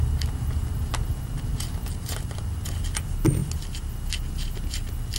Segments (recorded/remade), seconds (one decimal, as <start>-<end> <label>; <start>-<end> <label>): 0.0-1.5 recorded; 1.5-2.7 remade; 2.7-5.2 recorded